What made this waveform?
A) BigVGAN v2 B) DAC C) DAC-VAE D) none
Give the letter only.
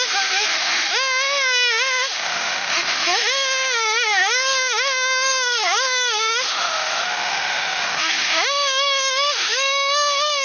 C